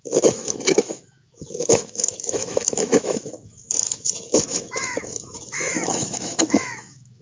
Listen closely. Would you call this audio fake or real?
fake